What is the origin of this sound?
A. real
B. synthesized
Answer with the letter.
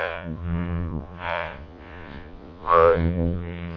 B